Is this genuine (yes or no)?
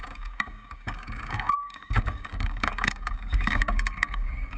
no